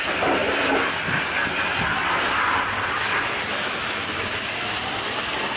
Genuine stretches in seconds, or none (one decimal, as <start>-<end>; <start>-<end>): 0.0-0.4; 0.9-1.4; 4.8-5.6